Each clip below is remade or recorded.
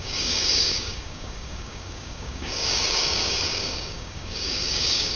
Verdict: remade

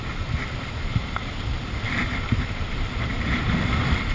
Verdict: recorded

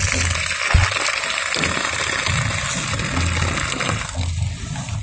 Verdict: recorded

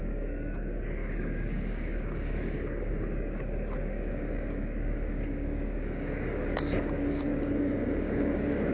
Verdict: remade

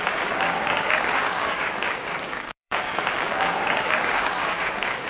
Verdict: remade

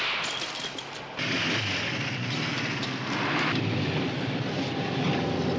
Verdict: recorded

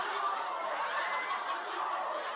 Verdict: recorded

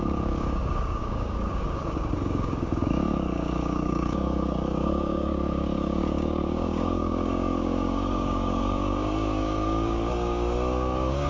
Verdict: remade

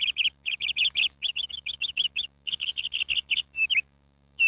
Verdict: remade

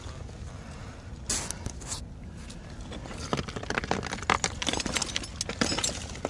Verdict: recorded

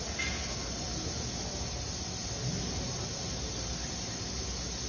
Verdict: recorded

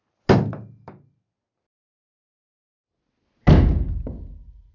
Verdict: recorded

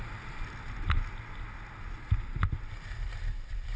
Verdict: recorded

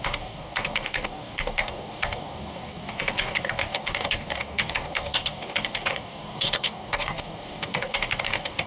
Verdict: remade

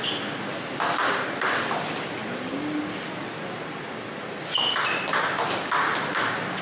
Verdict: recorded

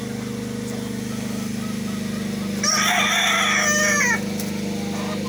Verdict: recorded